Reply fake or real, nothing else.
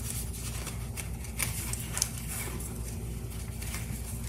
real